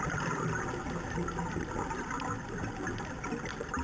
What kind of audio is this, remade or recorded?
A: recorded